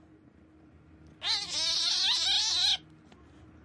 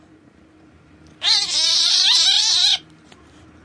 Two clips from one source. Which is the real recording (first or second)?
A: first